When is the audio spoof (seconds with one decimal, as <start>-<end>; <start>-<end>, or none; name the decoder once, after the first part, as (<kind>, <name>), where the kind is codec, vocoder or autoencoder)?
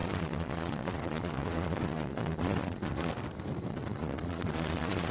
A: 0.0-3.1 (vocoder, Vocos); 3.7-5.1